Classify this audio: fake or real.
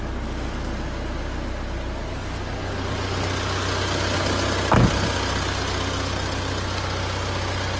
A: real